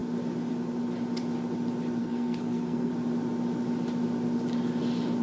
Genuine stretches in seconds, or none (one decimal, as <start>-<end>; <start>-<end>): 0.0-2.0; 2.9-5.2